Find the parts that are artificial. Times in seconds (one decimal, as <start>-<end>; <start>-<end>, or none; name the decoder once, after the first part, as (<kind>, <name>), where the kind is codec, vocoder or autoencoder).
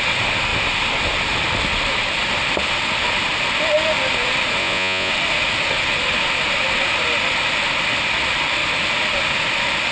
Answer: 4.6-5.1 (vocoder, Vocos)